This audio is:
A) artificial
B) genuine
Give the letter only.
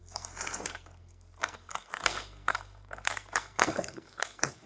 A